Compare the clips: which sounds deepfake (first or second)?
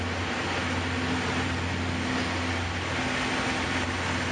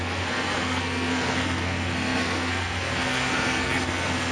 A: second